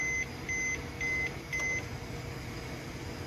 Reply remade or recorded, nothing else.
recorded